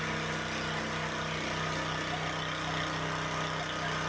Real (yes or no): yes